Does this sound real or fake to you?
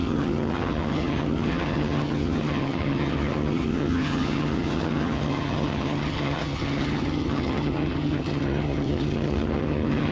fake